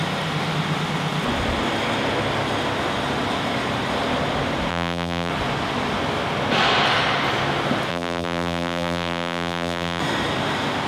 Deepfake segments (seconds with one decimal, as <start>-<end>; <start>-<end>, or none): 4.7-5.3; 7.9-10.0

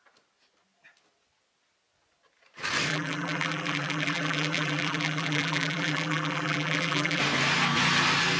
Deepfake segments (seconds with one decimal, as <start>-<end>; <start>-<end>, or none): 2.9-7.2

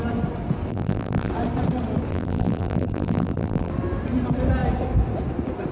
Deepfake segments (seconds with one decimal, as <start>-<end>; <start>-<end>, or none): 0.7-1.3; 2.1-3.7

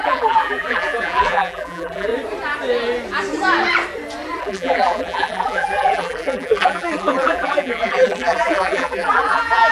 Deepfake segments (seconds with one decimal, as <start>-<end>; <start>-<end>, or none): 0.0-2.1; 4.4-9.7

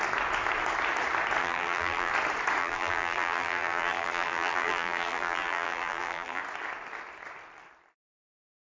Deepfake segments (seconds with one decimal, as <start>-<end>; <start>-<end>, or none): 1.4-2.1; 2.6-6.4